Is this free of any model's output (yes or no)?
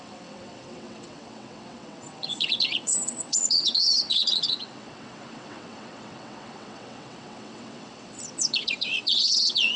no